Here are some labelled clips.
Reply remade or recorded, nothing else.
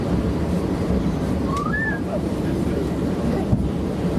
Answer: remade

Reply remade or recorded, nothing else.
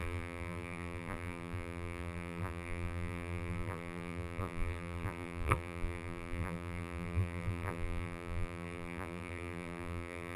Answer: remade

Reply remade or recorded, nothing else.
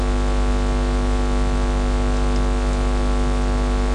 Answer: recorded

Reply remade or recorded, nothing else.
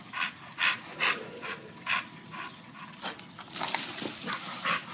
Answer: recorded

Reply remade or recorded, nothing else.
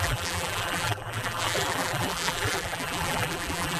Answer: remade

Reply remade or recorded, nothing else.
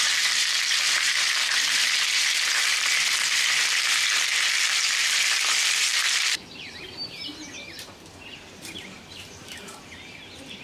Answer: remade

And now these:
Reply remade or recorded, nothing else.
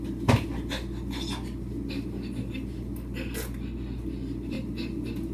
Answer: recorded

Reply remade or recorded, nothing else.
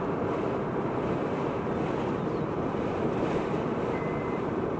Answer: remade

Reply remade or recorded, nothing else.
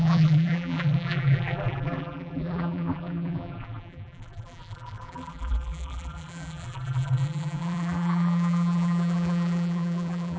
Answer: remade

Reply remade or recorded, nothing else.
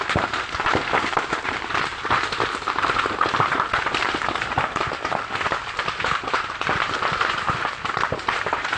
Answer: remade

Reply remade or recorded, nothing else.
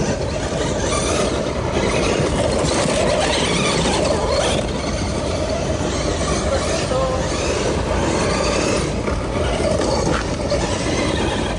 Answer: recorded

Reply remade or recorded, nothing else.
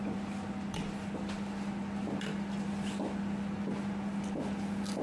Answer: recorded